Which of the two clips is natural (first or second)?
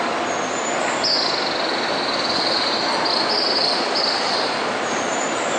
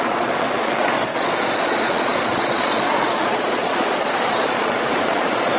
first